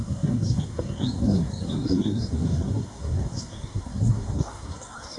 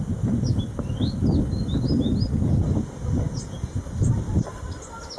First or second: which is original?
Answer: second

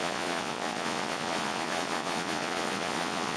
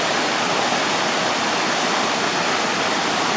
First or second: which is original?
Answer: second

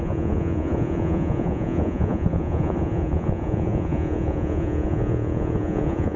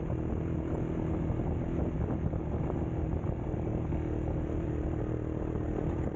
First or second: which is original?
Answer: second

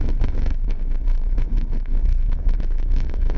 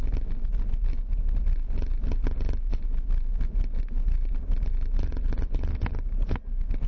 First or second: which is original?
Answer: second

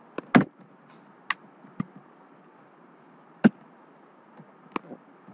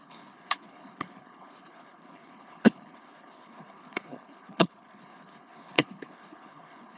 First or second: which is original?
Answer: first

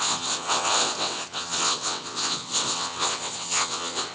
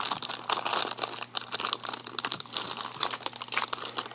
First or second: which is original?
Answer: second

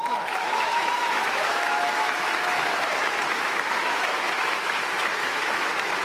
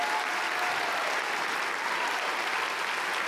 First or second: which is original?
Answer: second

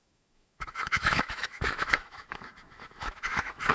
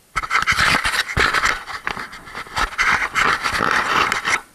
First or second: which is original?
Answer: second